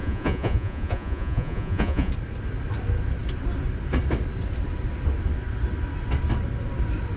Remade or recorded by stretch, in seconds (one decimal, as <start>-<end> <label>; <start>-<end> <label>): 0.0-2.1 remade; 2.1-7.2 recorded

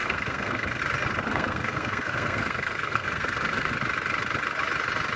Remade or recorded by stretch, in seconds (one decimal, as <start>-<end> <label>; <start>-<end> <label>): 0.0-0.8 remade; 0.8-1.3 recorded; 1.3-3.7 remade; 3.7-5.2 recorded